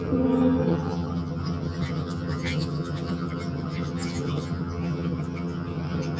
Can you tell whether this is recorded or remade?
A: remade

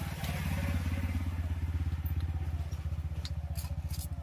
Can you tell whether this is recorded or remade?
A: recorded